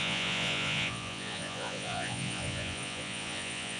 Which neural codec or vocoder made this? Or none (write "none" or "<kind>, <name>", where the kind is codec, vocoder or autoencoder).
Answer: vocoder, Vocos